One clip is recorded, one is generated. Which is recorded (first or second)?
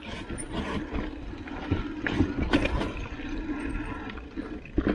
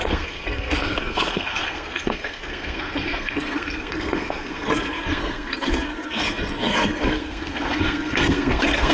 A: first